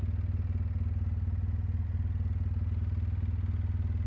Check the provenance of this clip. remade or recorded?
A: recorded